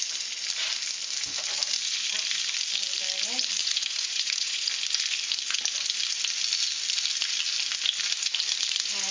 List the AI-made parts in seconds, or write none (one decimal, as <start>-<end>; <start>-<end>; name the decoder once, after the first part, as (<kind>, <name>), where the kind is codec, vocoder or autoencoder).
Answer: 3.6-4.7 (vocoder, Vocos)